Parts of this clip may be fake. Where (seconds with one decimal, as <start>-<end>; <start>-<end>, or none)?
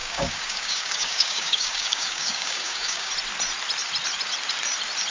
0.0-3.1